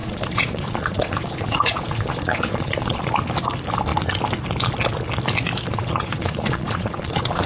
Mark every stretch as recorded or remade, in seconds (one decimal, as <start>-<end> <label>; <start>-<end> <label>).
0.0-3.1 remade; 3.1-5.7 recorded; 5.7-7.5 remade